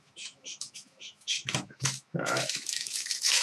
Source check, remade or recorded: remade